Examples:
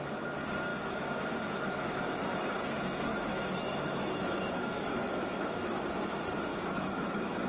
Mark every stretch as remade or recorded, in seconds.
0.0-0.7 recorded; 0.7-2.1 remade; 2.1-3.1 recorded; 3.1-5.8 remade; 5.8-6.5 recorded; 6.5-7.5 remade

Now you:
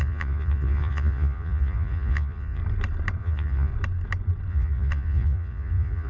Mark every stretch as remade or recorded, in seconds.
0.0-2.6 remade; 2.6-3.2 recorded; 3.2-3.7 remade; 3.7-4.5 recorded; 4.5-6.1 remade

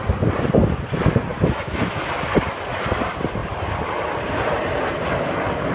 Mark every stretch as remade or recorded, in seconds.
0.0-1.3 recorded; 1.3-1.9 remade; 1.9-3.4 recorded; 3.4-5.2 remade; 5.2-5.7 recorded

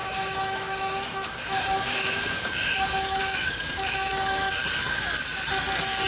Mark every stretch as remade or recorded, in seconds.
0.0-4.6 remade; 4.6-6.1 recorded

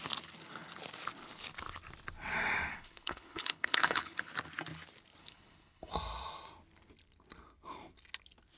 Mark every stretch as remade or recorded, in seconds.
0.0-2.7 recorded; 2.7-4.3 remade; 4.3-5.2 recorded; 5.2-5.9 remade; 5.9-8.6 recorded

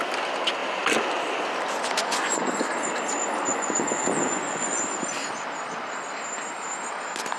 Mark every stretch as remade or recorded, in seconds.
0.0-2.0 recorded; 2.0-2.5 remade; 2.5-3.5 recorded; 3.5-4.8 remade; 4.8-7.4 recorded